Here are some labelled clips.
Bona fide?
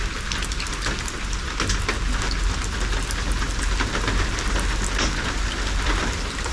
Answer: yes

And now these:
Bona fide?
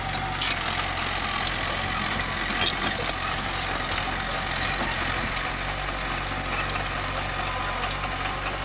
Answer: yes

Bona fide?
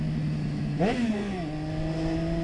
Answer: yes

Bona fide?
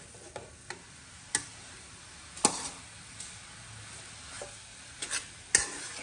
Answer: yes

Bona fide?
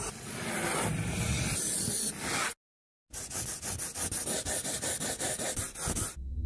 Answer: yes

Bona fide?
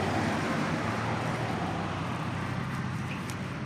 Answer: yes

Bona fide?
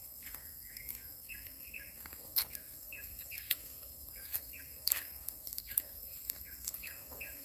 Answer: no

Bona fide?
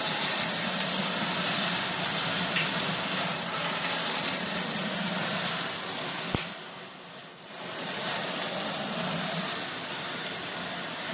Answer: yes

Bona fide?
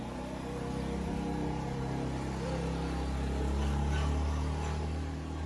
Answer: yes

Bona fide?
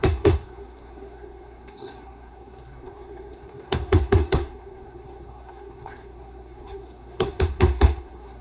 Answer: no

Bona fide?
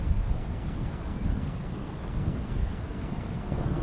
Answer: no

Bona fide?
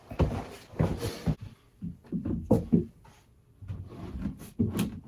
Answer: yes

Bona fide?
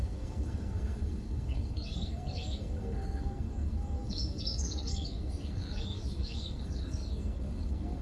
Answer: no